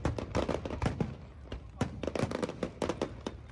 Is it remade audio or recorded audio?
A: recorded